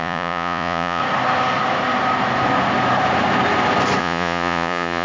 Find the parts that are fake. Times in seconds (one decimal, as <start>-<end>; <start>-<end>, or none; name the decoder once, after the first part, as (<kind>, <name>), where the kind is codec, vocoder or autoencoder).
0.0-1.0 (vocoder, Vocos); 4.0-5.0